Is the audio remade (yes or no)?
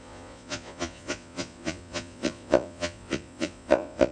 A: yes